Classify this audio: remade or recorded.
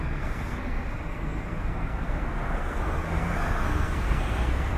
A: remade